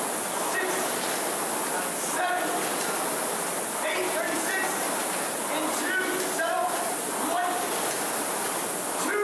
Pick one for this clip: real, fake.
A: real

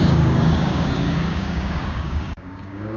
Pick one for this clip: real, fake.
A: fake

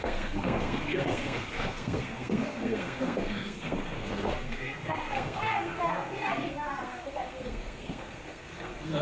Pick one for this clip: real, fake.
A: fake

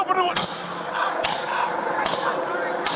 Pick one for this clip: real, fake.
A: real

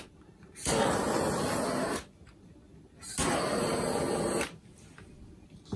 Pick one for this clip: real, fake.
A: real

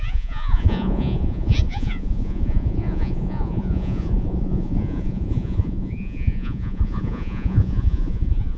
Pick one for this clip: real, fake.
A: fake